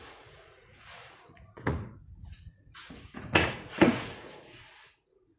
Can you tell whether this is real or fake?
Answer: fake